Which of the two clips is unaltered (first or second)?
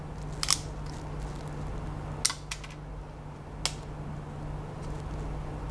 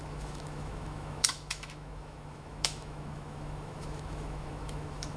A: first